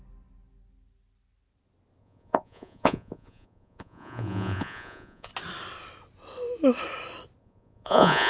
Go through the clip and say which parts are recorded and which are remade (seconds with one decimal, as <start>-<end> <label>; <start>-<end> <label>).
0.0-2.0 recorded; 2.0-5.3 remade; 5.3-7.4 recorded; 7.4-8.3 remade